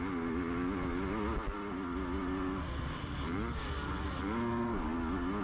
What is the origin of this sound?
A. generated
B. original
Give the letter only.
B